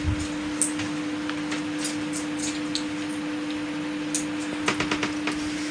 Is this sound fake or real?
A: real